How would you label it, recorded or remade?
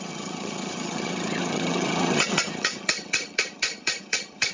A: remade